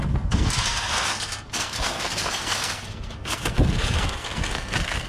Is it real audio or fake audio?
fake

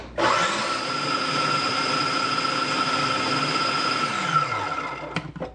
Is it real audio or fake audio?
real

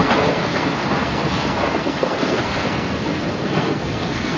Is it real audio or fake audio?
fake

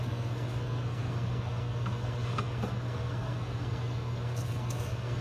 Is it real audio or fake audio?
fake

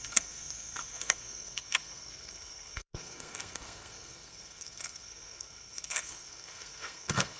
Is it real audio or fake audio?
fake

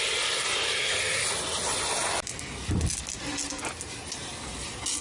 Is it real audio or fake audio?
real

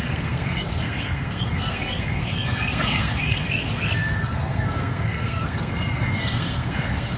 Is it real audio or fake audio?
fake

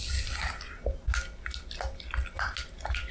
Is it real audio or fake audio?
real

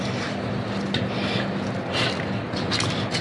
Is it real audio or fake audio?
real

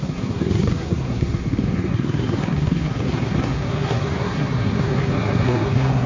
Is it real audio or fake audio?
fake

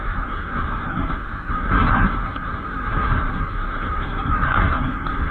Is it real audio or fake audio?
fake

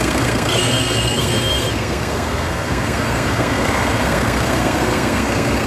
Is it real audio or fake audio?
fake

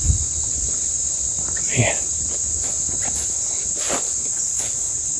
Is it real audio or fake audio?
real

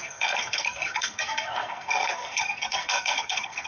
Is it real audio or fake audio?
fake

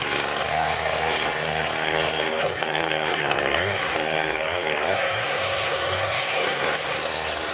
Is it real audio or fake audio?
fake